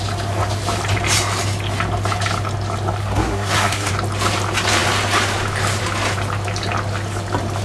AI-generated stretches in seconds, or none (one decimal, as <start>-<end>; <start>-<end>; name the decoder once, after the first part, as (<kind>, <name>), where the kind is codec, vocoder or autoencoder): 3.0-3.9 (codec, SNAC)